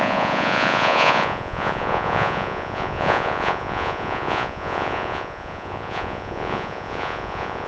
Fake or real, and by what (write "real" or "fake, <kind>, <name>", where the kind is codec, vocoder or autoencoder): fake, vocoder, Vocos